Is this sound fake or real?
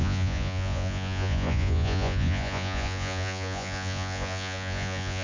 fake